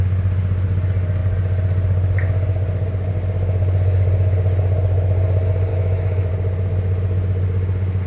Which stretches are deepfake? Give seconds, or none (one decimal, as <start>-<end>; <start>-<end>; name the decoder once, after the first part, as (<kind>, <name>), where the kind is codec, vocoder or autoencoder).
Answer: 5.7-6.3 (autoencoder, DAC-VAE)